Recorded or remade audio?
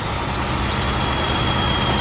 recorded